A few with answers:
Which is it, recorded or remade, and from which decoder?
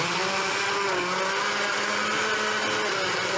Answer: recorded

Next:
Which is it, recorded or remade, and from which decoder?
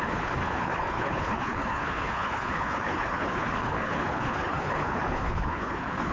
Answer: remade, codec, HILCodec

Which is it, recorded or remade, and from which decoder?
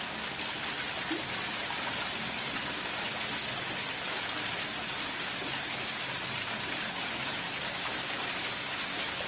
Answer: recorded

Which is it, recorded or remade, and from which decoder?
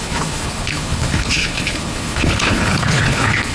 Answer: remade, codec, HILCodec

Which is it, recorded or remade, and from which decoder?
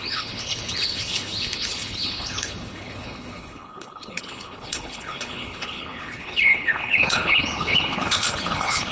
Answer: remade, codec, HILCodec